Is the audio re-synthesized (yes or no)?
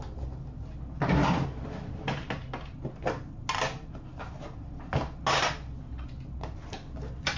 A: no